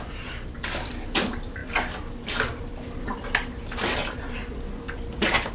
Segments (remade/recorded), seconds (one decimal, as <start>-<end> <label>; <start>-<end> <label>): 0.0-1.6 remade; 1.6-2.7 recorded; 2.7-5.5 remade